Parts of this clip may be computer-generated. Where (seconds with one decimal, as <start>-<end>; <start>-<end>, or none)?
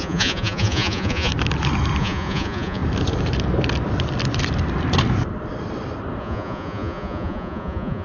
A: 0.0-1.3; 2.0-2.8; 6.2-8.0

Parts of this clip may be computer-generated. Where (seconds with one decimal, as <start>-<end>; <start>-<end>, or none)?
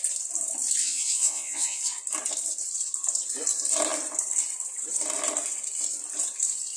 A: 0.8-1.8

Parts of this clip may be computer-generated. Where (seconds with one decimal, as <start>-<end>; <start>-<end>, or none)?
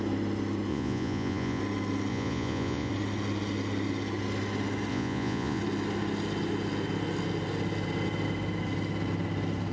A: 0.7-1.6; 2.1-2.9; 4.9-5.6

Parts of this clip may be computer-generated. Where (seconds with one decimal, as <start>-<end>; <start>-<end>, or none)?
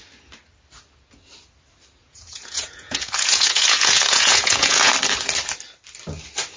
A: 2.0-4.9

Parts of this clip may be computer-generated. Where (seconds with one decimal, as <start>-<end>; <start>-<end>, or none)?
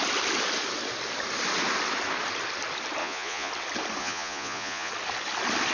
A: 3.0-3.5; 4.0-4.9